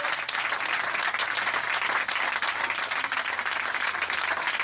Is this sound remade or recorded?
recorded